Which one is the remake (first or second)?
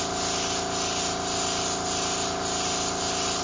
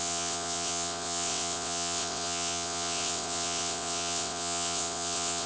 second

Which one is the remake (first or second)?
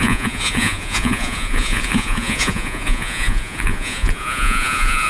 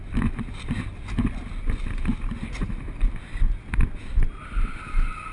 first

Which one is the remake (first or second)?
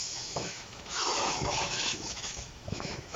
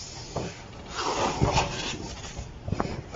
first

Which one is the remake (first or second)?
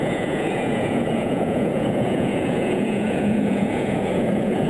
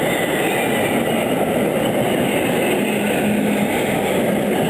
first